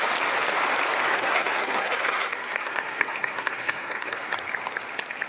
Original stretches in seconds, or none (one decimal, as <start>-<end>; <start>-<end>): 0.0-1.1; 4.3-5.3